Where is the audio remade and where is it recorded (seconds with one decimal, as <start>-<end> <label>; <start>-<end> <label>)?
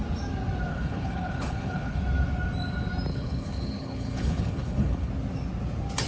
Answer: 0.0-0.7 recorded; 0.7-2.0 remade; 2.0-3.1 recorded; 3.1-5.1 remade; 5.1-6.1 recorded